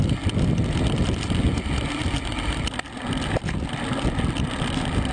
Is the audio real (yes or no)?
yes